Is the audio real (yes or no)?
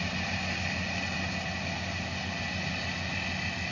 yes